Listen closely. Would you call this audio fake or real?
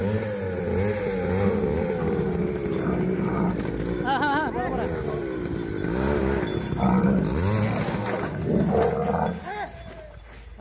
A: real